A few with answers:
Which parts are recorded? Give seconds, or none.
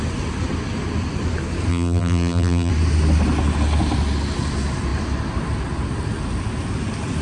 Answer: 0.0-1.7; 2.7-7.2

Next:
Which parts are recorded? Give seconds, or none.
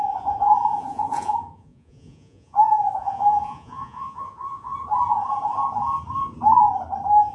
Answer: 4.7-7.3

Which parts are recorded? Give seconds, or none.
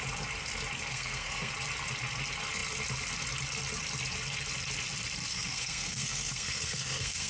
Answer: 0.0-0.9; 1.5-5.3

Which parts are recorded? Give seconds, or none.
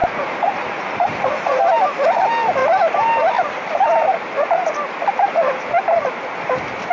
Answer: 1.6-6.9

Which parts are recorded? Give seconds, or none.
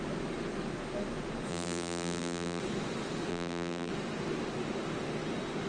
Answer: 0.0-1.5; 2.6-3.3; 3.9-5.7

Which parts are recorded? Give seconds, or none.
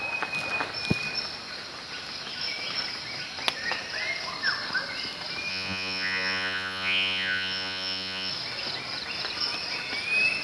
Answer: 0.0-5.5; 8.3-10.4